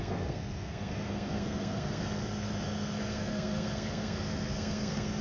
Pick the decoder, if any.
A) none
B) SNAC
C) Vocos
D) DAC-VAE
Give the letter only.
B